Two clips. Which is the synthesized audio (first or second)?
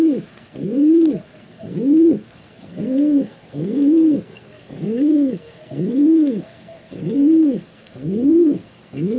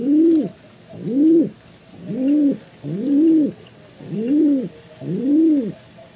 first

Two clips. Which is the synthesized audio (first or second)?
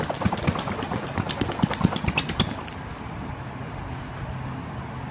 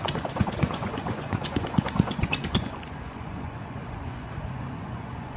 second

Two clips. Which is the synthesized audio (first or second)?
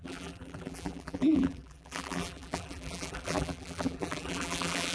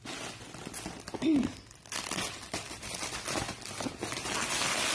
first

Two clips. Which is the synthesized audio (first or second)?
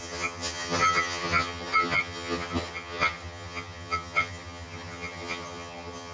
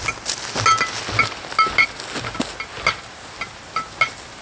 first